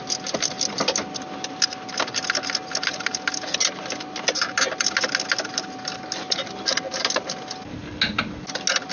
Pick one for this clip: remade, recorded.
recorded